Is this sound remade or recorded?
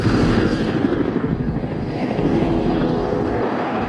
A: remade